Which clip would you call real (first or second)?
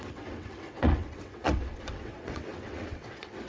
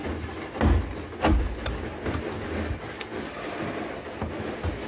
second